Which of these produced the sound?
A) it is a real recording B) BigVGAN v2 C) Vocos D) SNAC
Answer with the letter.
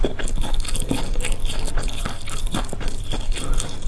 A